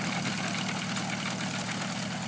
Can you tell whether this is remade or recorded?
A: recorded